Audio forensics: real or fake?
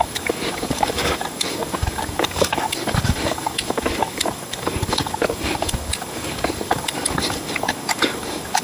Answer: fake